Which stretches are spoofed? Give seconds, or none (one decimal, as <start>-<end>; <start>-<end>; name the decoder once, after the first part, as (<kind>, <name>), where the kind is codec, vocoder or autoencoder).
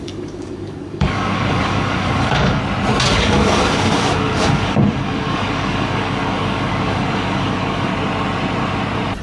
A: 0.0-2.6 (codec, DAC); 3.1-7.9